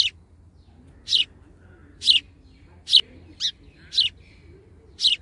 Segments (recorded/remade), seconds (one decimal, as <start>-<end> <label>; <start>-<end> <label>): 0.0-5.2 recorded